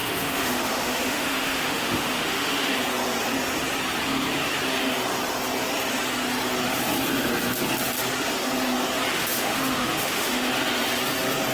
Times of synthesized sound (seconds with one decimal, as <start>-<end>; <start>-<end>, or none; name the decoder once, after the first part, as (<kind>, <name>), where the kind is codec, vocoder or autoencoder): 0.0-2.7 (autoencoder, DAC-VAE); 9.1-10.5